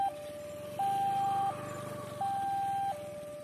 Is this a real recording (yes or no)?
yes